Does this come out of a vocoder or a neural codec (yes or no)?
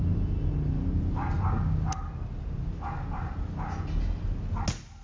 no